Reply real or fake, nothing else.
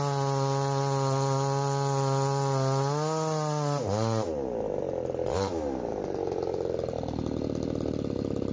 real